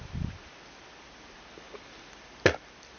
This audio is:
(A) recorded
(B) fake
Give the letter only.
A